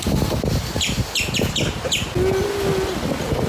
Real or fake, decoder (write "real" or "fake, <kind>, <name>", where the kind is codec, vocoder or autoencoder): real